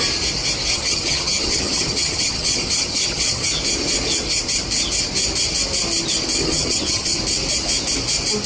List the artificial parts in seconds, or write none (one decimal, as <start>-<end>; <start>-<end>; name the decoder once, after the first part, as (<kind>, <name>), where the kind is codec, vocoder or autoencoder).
0.7-3.5 (vocoder, HiFi-GAN); 6.4-7.2